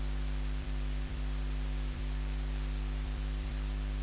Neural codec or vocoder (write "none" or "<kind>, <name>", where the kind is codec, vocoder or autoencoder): vocoder, BigVGAN v2